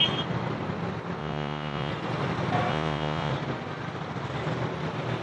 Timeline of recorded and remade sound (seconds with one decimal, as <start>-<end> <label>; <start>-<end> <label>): 0.0-1.2 recorded; 1.2-1.9 remade; 1.9-2.7 recorded; 2.7-3.3 remade; 3.3-5.2 recorded